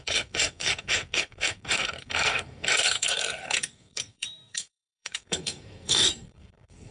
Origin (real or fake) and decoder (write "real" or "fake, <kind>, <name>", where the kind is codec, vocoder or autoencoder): fake, codec, SNAC